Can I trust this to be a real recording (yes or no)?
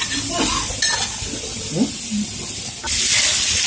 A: yes